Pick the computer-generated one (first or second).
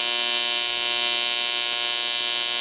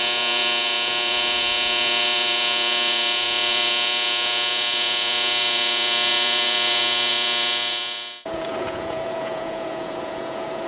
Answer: second